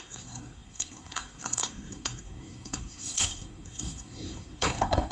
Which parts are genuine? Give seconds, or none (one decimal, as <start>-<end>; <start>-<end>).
none

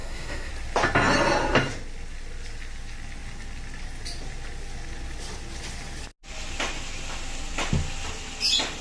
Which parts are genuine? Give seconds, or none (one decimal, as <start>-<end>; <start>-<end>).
0.5-8.8